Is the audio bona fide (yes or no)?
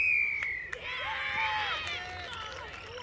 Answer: yes